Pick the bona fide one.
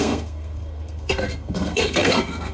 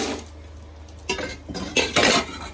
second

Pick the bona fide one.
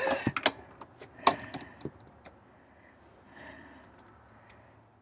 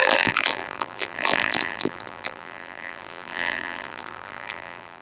first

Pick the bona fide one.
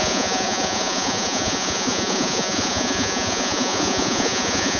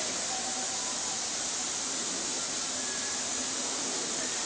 second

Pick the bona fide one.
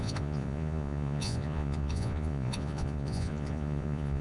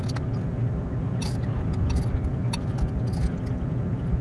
second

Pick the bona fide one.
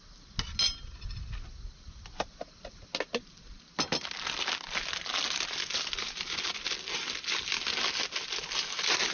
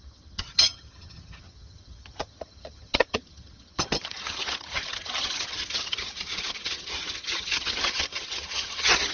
first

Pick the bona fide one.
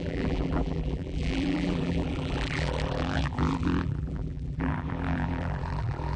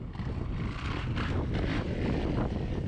second